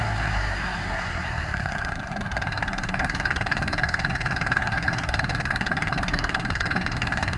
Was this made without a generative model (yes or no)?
no